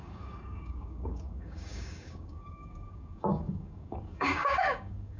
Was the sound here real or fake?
fake